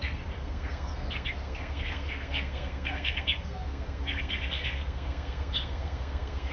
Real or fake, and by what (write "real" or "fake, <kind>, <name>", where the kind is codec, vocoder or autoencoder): fake, codec, SNAC